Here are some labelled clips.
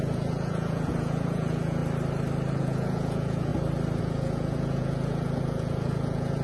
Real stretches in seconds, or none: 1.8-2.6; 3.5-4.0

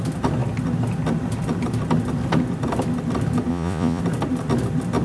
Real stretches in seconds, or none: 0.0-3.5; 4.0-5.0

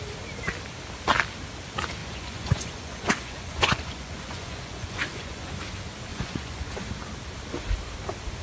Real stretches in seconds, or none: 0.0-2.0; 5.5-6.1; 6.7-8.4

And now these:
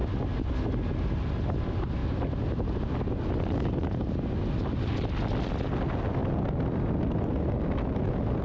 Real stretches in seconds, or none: 0.0-8.4

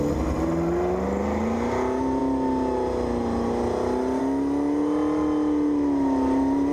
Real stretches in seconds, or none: 0.0-6.7

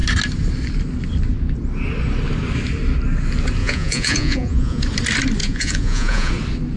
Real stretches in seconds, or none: 0.0-3.6; 4.8-5.4; 6.3-6.8